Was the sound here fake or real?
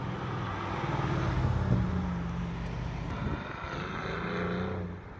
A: real